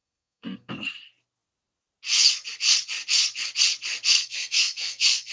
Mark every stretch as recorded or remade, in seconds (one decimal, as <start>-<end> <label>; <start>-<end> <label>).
0.0-0.7 remade; 0.7-4.1 recorded; 4.1-5.3 remade